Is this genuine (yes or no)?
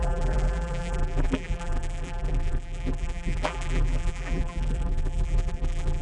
no